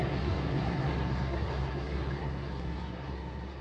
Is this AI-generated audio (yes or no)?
yes